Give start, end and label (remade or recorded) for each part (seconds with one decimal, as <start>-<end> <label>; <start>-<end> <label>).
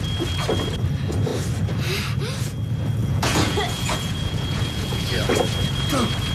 0.0-3.0 recorded; 3.0-5.3 remade; 5.3-6.3 recorded